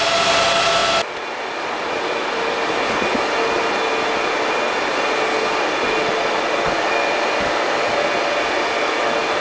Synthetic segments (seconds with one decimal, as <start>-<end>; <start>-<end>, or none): none